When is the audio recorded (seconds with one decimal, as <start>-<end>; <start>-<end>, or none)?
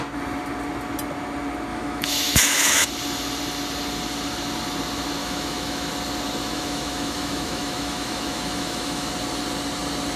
0.0-1.7; 2.9-5.2; 5.9-6.4; 9.1-10.2